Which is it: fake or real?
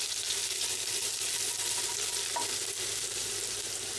real